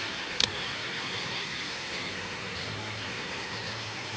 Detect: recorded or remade remade